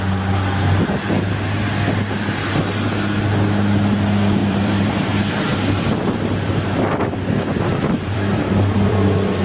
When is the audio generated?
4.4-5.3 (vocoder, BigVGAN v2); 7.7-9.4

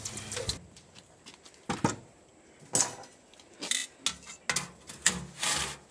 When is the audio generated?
none

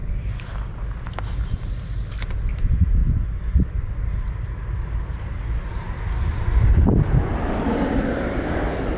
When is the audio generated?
none